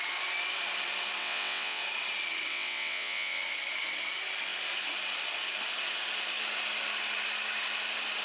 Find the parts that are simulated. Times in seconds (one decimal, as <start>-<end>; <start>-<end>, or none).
1.2-1.8; 2.5-3.4